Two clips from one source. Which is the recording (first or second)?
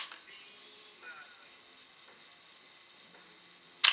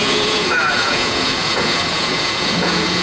first